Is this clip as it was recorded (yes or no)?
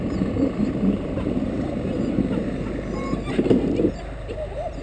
no